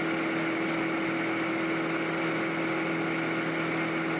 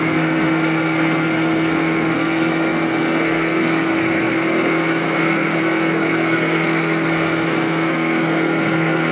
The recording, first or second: first